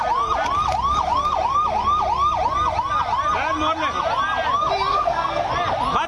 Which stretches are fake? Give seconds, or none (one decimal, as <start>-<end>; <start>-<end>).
4.9-5.5

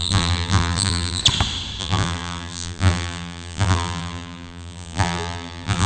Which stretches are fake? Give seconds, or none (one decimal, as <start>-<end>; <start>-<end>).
0.0-1.2; 1.8-5.9

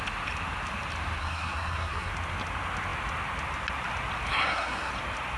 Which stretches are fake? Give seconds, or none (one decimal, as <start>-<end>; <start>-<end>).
1.2-2.1; 4.3-4.9